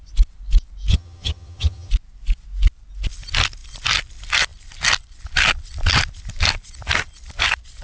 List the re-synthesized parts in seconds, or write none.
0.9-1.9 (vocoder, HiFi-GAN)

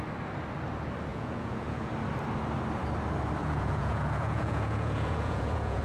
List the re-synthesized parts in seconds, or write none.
1.1-1.9 (vocoder, Vocos); 3.4-5.8